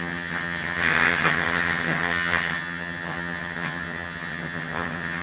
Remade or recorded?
remade